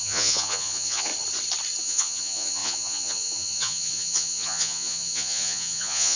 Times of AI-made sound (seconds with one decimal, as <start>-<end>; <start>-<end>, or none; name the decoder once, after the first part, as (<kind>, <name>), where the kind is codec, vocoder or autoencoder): 0.0-1.1 (vocoder, Vocos); 1.8-6.2